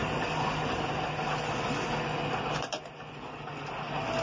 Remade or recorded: recorded